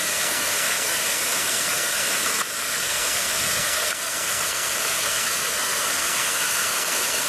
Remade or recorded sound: remade